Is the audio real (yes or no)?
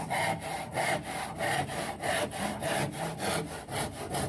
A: yes